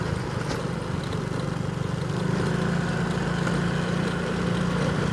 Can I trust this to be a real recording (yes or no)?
yes